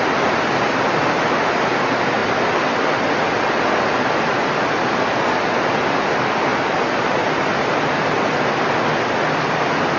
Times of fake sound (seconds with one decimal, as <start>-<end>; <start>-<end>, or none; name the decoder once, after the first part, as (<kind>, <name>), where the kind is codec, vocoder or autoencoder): none